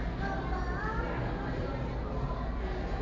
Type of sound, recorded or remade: recorded